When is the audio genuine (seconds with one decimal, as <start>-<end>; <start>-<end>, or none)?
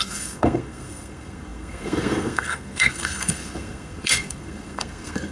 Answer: none